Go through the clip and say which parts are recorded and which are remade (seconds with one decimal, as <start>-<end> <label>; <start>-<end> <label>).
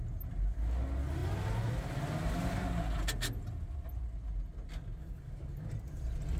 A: 0.0-5.0 recorded; 5.0-5.7 remade; 5.7-6.4 recorded